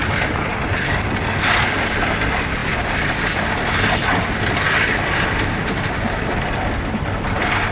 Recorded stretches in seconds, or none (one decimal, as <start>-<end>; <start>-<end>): 0.0-7.7